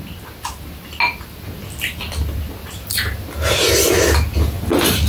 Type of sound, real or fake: real